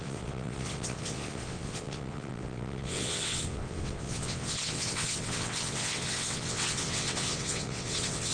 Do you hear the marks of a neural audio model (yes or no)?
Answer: yes